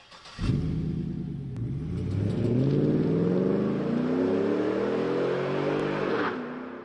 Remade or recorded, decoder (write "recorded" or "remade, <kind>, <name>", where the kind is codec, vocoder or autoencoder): recorded